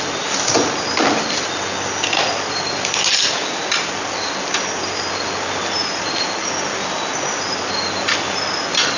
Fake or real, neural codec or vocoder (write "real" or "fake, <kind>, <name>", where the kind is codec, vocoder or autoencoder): real